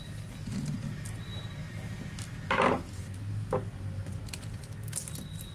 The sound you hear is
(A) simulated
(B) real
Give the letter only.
B